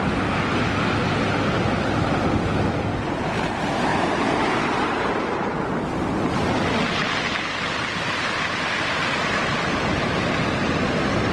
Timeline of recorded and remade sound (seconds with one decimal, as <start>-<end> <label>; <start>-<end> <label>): 0.0-3.9 recorded; 3.9-5.1 remade; 5.1-11.3 recorded

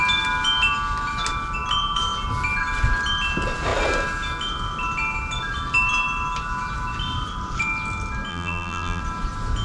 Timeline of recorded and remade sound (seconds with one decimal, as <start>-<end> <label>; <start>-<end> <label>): 0.0-8.3 recorded; 8.3-9.0 remade; 9.0-9.6 recorded

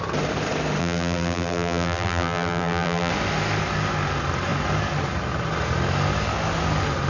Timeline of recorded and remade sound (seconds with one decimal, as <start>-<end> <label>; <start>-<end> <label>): 0.0-0.8 recorded; 0.8-3.1 remade; 3.1-7.1 recorded

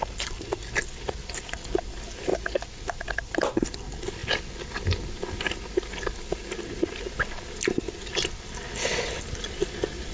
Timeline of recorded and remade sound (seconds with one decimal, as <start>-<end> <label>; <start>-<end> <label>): 0.0-0.6 remade; 0.6-1.5 recorded; 1.5-2.3 remade; 2.3-3.1 recorded; 3.1-4.2 remade; 4.2-8.1 recorded; 8.1-10.1 remade

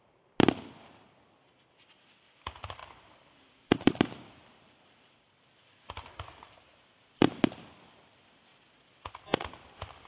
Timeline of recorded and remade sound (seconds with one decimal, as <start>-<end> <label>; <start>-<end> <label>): 0.0-2.8 recorded; 2.8-7.3 remade; 7.3-10.1 recorded